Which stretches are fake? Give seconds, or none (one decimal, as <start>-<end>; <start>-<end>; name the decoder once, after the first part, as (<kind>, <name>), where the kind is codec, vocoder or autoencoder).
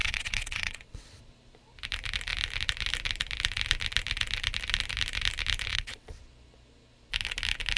0.0-1.2 (vocoder, WaveNeXt); 5.7-6.2